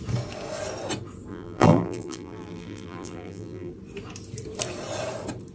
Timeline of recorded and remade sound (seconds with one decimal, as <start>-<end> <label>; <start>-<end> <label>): 0.0-1.3 recorded; 1.3-3.7 remade; 3.7-5.5 recorded